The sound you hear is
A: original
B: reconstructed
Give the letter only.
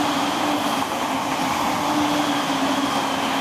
A